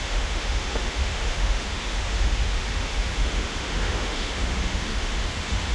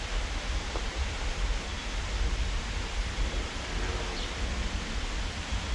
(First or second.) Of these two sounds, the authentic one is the second